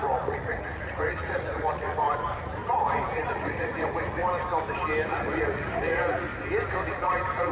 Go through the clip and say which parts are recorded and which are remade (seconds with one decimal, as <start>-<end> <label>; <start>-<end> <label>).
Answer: 0.0-4.2 remade; 4.2-5.1 recorded; 5.1-6.3 remade; 6.3-6.9 recorded; 6.9-7.5 remade